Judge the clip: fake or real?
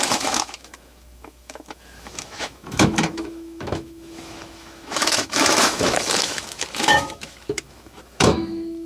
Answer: fake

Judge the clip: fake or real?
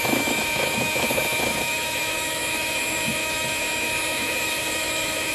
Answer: fake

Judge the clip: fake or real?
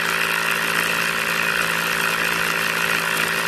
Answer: real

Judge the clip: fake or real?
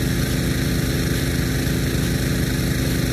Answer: real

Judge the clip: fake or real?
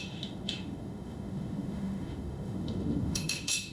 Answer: fake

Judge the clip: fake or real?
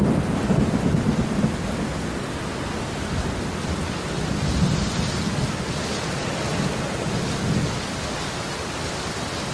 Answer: real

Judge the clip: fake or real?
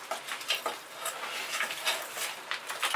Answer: real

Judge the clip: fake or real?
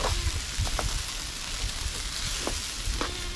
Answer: real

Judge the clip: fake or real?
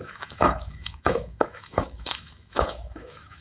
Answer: fake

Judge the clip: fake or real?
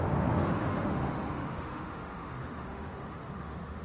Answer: fake